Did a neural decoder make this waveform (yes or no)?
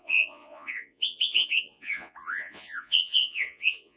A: yes